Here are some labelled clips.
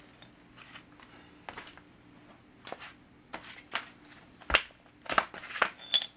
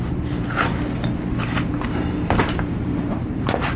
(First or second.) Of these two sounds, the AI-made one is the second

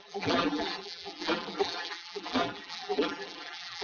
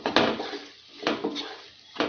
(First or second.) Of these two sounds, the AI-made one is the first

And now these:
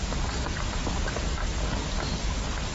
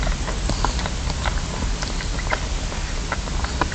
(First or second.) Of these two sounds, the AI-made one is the first